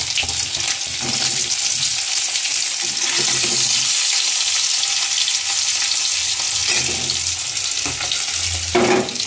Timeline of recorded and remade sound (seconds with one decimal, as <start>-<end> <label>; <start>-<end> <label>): 0.0-9.3 recorded